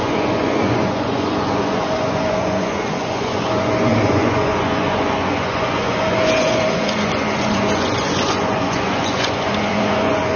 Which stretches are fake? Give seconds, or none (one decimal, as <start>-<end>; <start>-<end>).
0.0-10.4